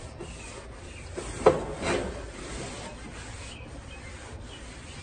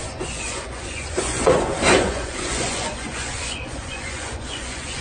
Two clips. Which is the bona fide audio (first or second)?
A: first